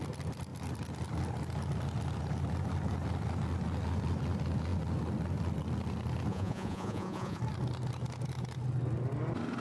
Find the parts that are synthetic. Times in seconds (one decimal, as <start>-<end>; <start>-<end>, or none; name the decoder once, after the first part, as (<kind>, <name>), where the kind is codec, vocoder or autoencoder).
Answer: 6.3-7.4 (vocoder, Vocos)